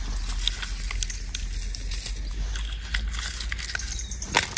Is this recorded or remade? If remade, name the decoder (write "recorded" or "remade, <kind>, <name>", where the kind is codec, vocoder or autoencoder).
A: recorded